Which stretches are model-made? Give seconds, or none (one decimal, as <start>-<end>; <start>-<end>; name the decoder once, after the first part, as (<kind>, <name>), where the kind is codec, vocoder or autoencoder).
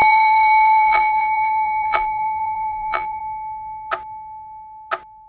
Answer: 0.0-3.2 (vocoder, BigVGAN v2)